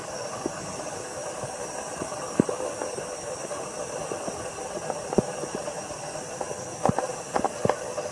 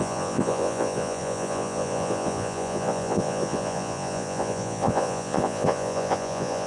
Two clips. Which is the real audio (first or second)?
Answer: first